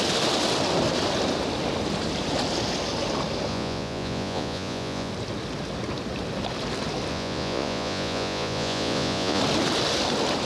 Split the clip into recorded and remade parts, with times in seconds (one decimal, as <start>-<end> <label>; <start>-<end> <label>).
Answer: 0.0-3.5 recorded; 3.5-5.1 remade; 5.1-7.1 recorded; 7.1-9.4 remade; 9.4-10.5 recorded